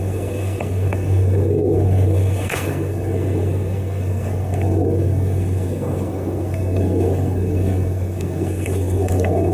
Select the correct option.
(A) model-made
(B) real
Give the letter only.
A